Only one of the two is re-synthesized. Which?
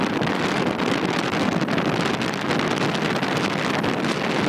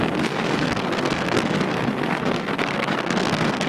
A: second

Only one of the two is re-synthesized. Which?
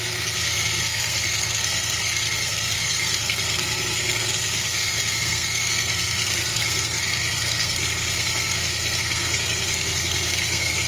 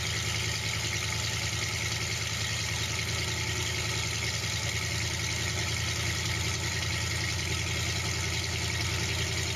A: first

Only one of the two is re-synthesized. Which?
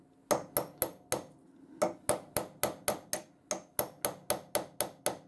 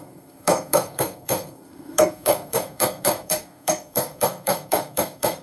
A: second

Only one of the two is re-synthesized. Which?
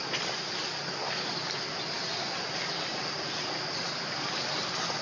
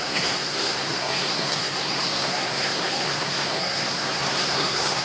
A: second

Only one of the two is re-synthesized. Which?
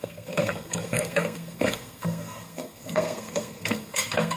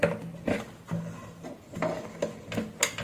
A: first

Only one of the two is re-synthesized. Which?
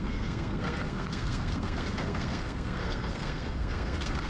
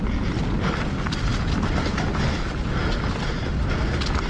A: first